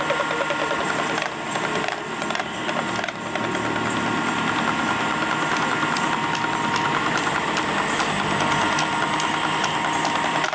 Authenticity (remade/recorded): recorded